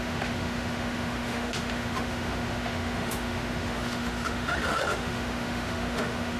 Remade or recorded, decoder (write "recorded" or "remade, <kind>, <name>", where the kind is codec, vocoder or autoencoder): remade, autoencoder, DAC-VAE